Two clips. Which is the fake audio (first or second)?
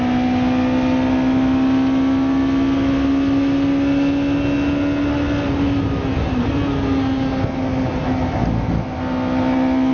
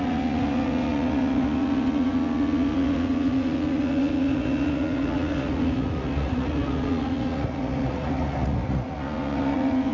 second